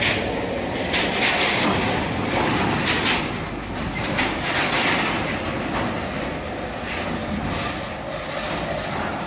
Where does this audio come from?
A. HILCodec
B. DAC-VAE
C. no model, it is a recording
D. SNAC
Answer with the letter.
C